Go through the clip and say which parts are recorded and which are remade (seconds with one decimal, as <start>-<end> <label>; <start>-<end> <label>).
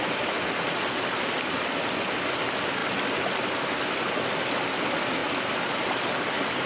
0.0-5.2 recorded; 5.2-6.0 remade; 6.0-6.7 recorded